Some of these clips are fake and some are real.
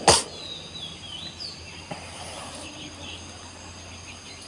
real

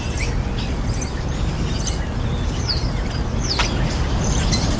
real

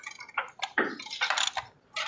real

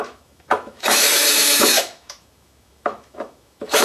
fake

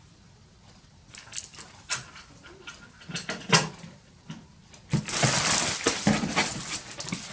real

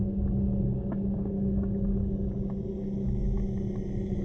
real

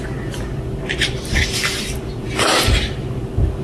real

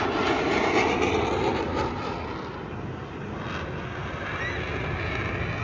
real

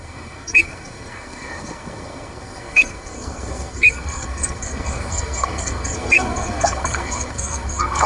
fake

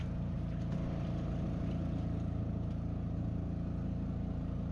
real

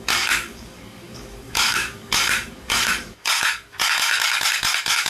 fake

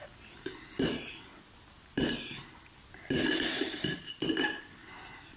real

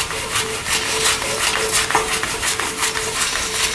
real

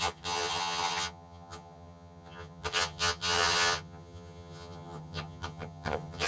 fake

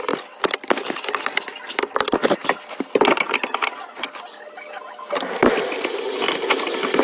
real